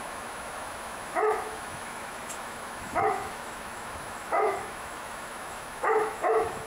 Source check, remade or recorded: remade